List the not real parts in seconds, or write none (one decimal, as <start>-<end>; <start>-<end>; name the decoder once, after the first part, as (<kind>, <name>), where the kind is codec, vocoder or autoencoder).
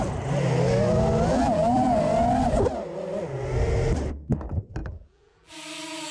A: 1.3-2.0 (vocoder, BigVGAN v2); 4.8-5.5